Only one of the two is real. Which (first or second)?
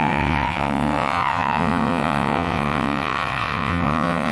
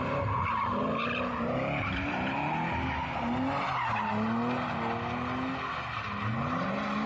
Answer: second